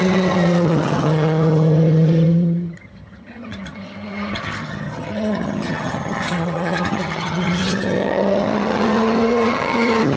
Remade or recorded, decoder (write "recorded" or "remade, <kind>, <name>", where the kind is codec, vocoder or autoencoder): remade, vocoder, HiFi-GAN